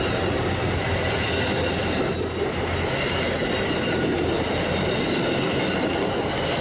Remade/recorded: recorded